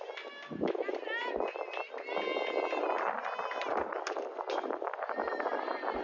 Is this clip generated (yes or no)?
no